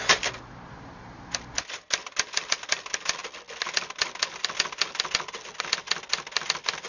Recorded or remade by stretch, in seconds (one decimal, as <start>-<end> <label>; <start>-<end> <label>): 0.0-6.9 recorded